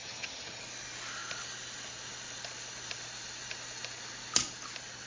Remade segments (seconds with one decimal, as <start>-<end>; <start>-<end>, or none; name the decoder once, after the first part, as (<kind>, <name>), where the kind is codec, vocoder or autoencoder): 0.0-0.6 (vocoder, HiFi-GAN)